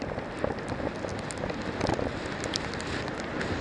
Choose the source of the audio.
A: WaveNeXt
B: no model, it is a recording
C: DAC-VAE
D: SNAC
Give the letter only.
B